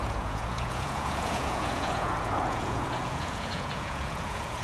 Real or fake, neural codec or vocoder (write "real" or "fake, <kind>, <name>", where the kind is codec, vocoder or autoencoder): fake, vocoder, Vocos